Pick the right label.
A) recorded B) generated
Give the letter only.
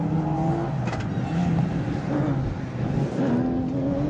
A